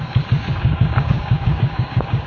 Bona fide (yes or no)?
no